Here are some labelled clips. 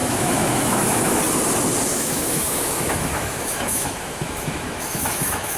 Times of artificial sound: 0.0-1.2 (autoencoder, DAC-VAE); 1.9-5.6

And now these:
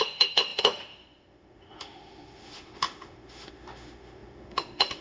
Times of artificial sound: 0.0-5.0 (autoencoder, DAC-VAE)

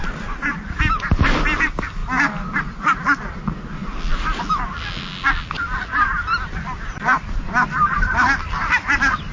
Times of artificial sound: none

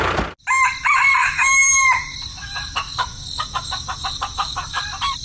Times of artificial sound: 1.2-1.7 (autoencoder, DAC-VAE); 2.3-4.8

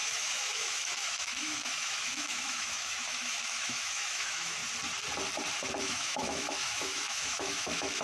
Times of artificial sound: 0.0-4.6 (autoencoder, DAC-VAE); 5.8-8.0

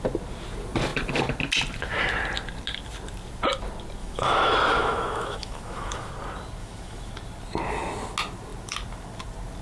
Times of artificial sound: 4.0-6.1 (autoencoder, DAC-VAE); 6.6-7.1

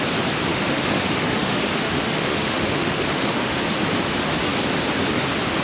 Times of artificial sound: 0.5-3.6 (autoencoder, DAC-VAE)